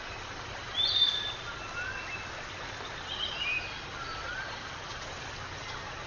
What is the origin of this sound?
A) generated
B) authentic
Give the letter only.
B